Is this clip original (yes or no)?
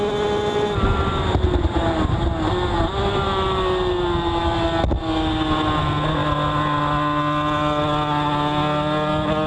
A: yes